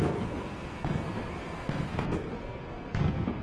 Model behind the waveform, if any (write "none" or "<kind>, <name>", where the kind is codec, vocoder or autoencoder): codec, SNAC